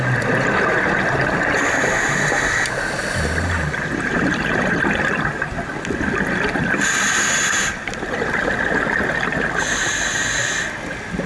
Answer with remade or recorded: recorded